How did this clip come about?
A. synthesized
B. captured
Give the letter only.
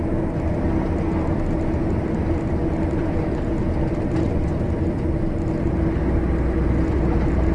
B